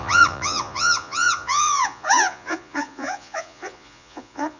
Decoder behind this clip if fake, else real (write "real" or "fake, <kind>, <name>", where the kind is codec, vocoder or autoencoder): fake, vocoder, Vocos